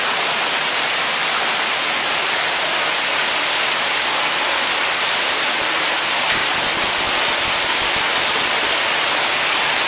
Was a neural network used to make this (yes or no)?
no